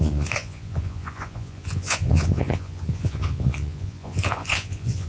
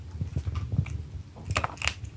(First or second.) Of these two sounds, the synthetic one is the first